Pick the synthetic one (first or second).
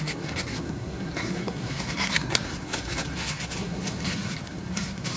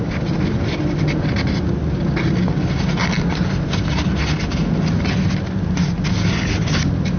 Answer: first